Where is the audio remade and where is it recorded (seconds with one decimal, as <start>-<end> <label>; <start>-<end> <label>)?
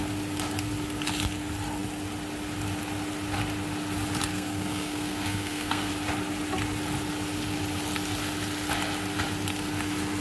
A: 0.0-4.3 recorded; 4.3-5.9 remade; 5.9-10.2 recorded